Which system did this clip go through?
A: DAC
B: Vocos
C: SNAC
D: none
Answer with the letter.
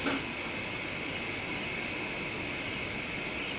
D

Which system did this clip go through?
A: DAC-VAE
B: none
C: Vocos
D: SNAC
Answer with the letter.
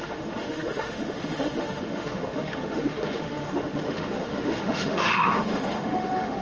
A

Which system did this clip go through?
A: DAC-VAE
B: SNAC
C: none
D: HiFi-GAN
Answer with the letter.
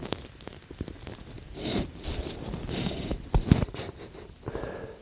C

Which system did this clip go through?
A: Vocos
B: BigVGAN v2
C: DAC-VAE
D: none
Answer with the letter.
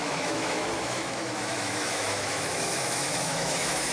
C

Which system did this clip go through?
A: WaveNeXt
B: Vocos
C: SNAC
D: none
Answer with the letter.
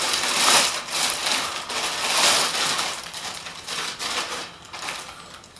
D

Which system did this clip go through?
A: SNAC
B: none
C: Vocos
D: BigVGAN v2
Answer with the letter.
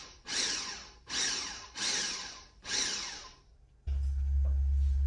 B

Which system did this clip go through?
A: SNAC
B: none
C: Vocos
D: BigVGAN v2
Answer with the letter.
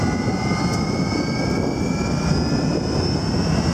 B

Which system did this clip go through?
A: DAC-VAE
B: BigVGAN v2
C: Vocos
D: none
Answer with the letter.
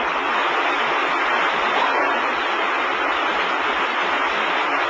D